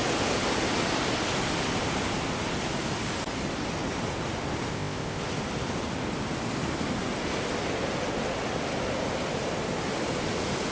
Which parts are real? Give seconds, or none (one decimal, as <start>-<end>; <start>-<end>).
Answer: 0.0-4.7; 5.2-10.7